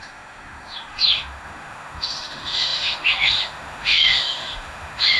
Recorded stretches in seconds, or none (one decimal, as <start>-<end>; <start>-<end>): none

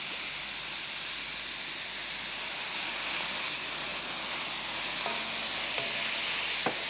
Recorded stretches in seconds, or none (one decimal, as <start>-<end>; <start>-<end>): 0.0-6.9

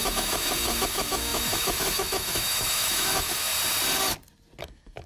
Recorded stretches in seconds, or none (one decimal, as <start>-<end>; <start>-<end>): 3.5-4.6

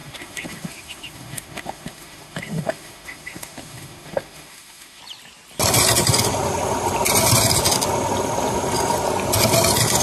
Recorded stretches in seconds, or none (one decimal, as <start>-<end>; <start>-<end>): 5.0-10.0

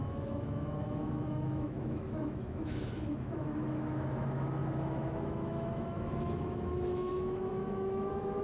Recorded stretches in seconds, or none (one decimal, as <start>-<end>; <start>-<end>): none

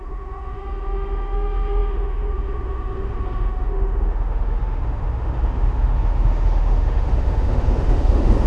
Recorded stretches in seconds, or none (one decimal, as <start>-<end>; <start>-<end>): none

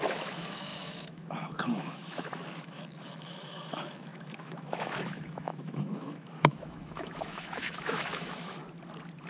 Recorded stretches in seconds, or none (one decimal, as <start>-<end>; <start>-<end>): 8.6-9.3